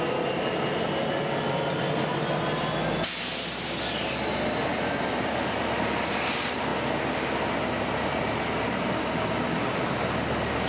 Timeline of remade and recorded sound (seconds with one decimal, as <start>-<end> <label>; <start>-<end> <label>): 0.0-10.7 recorded